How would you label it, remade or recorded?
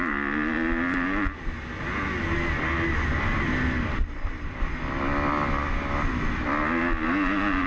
recorded